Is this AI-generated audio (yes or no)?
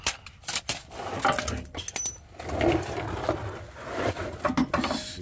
no